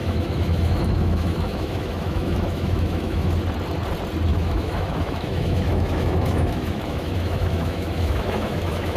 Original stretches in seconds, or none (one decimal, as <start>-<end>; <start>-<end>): 3.3-4.3